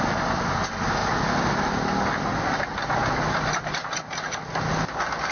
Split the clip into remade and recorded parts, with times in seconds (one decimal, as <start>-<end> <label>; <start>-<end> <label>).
0.0-5.3 recorded